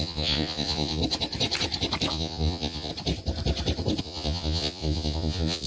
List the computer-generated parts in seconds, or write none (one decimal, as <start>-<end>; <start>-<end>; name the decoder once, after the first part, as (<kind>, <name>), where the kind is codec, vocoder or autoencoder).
0.0-1.0 (vocoder, Vocos); 2.1-2.9; 4.0-5.7